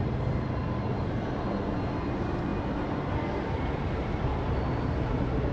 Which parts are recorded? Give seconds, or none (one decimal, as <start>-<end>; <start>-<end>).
0.0-5.5